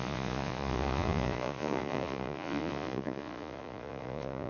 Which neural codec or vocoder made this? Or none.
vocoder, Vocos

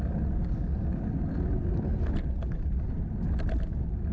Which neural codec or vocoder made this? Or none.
none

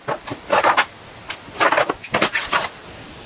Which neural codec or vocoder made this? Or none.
none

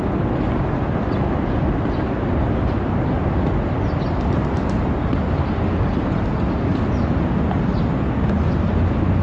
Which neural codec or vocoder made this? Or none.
none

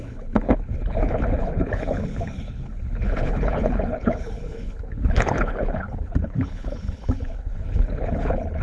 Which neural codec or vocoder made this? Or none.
codec, HILCodec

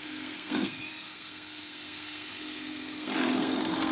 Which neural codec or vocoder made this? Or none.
codec, SNAC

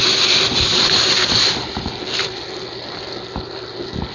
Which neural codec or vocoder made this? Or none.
none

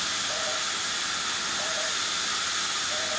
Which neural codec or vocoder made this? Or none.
none